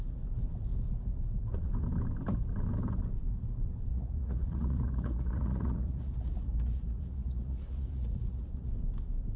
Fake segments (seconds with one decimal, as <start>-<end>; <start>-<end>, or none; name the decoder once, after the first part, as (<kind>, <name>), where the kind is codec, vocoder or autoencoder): 3.9-8.7 (vocoder, Vocos)